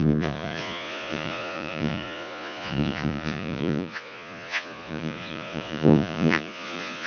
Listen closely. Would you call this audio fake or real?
fake